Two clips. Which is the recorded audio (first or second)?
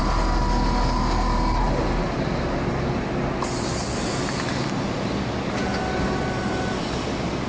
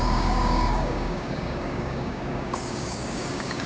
first